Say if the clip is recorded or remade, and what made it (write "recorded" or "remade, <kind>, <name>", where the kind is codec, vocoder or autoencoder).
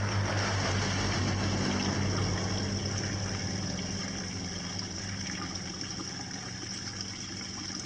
recorded